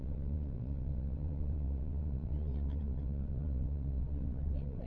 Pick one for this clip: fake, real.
fake